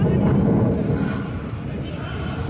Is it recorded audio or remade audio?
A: recorded